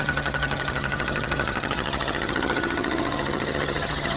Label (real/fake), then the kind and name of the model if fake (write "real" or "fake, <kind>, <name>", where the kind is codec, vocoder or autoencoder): fake, vocoder, HiFi-GAN